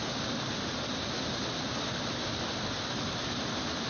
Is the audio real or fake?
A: real